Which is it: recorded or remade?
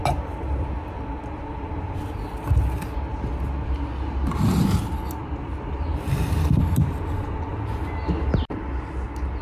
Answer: recorded